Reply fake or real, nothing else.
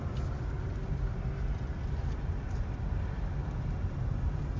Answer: real